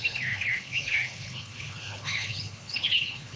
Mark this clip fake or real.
fake